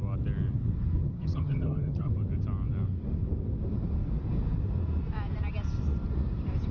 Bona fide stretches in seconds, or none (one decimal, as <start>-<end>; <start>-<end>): 0.0-1.0; 2.1-6.7